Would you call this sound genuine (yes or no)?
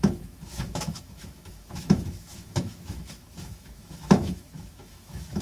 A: no